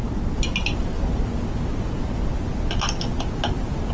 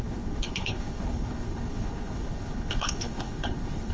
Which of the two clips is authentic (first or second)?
first